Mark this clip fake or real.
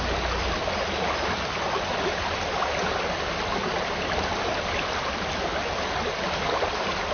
real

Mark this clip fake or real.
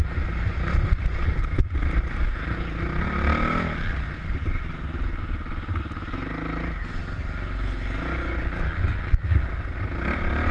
real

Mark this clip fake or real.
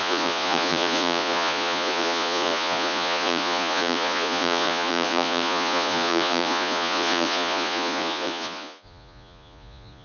fake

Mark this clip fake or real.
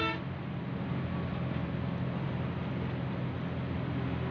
real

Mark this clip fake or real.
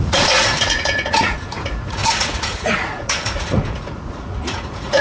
fake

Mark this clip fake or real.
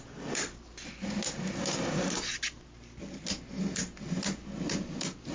real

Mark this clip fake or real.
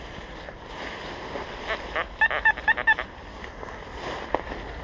real